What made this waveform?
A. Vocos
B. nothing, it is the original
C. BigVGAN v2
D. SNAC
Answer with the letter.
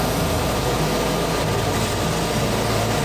B